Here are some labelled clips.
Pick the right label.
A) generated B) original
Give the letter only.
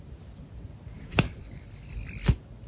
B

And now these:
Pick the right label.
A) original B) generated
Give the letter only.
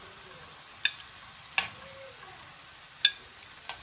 A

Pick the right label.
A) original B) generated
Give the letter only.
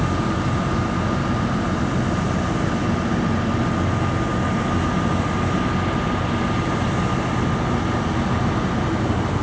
A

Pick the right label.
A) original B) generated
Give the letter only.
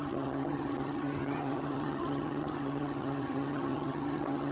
B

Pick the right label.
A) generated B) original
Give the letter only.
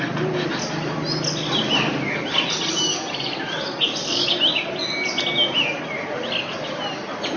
B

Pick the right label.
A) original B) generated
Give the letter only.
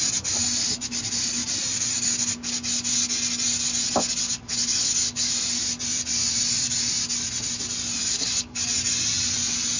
A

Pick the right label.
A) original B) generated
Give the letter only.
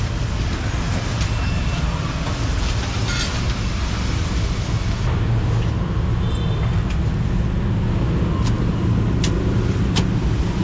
A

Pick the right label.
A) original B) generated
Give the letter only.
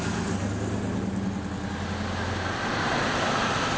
A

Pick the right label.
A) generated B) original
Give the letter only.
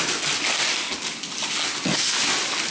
B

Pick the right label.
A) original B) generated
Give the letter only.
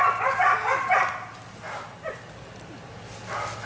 A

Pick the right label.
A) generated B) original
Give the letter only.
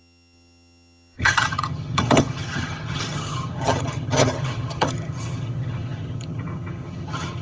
A